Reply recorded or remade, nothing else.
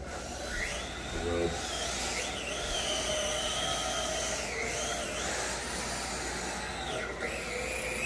recorded